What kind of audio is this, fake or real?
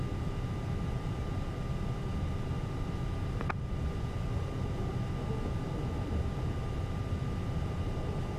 real